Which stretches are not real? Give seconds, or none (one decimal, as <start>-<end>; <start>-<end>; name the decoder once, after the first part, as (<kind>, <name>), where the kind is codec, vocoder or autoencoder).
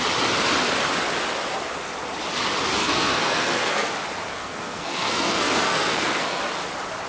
2.8-3.9 (codec, SNAC); 4.3-6.4